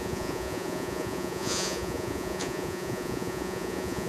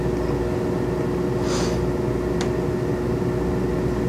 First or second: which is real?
second